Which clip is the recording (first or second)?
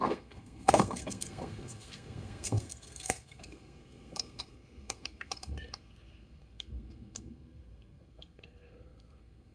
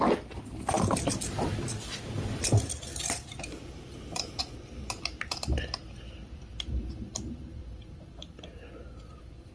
second